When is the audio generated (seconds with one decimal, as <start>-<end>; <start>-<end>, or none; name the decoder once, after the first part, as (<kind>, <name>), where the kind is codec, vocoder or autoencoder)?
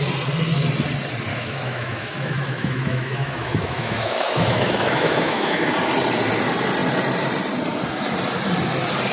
1.3-5.7 (autoencoder, DAC-VAE)